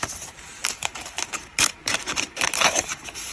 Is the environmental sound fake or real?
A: fake